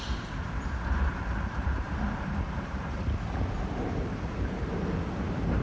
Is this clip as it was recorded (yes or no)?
no